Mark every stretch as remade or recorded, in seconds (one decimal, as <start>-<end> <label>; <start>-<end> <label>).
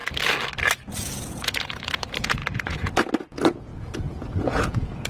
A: 0.0-0.9 recorded; 0.9-5.1 remade